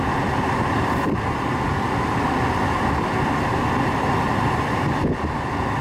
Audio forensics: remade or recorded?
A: recorded